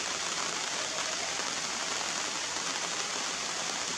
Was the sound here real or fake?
real